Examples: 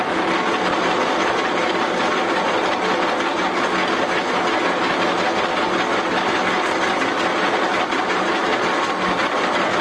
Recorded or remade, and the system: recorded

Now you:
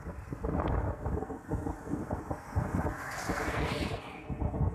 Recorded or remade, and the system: remade, codec, SNAC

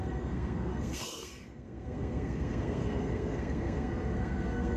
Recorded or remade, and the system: remade, codec, SNAC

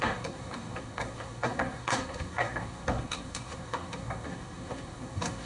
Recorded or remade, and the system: remade, codec, SNAC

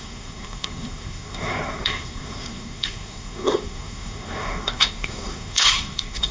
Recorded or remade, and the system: remade, codec, SNAC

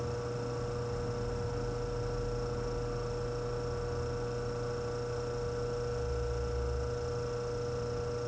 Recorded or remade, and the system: recorded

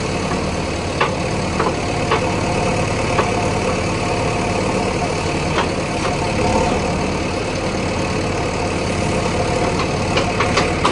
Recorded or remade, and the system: recorded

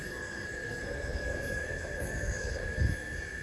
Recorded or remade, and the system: remade, codec, SNAC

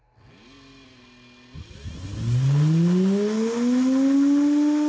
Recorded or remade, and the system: recorded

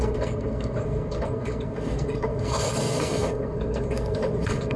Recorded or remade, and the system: remade, codec, SNAC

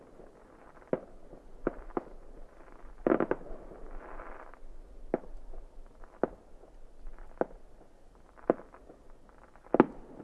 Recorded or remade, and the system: recorded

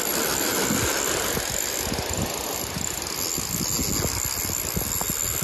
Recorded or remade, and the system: recorded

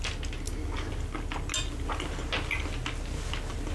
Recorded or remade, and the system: recorded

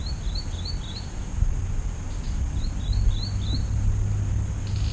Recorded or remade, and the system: recorded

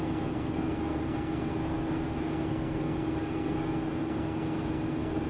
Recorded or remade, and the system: remade, codec, SNAC